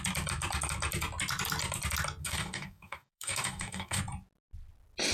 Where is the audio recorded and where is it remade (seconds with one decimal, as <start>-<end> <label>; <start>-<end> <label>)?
0.0-2.2 recorded; 2.2-4.0 remade; 4.0-5.1 recorded